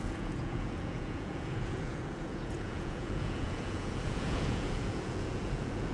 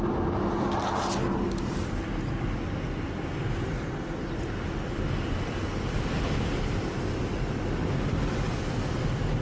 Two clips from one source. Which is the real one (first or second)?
second